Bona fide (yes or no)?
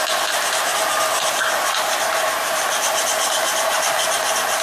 yes